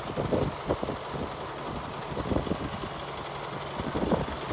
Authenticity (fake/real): real